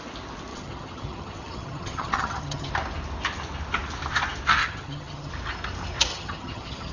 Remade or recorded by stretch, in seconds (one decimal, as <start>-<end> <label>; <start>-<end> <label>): 0.0-0.5 recorded; 0.5-2.7 remade; 2.7-4.6 recorded; 4.6-5.3 remade; 5.3-6.1 recorded; 6.1-6.9 remade